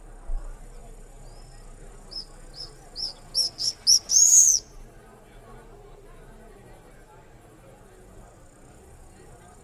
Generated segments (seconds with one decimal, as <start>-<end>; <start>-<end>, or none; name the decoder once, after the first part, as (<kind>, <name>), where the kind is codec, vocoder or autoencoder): none